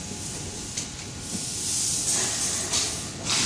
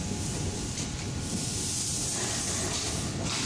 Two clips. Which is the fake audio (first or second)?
second